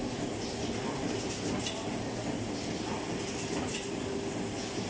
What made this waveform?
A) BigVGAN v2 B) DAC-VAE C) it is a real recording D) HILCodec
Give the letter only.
C